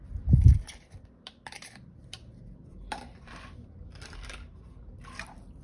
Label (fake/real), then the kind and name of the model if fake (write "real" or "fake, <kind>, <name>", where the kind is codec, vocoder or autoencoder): fake, vocoder, BigVGAN v2